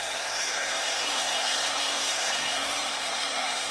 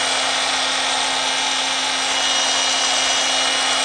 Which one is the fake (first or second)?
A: first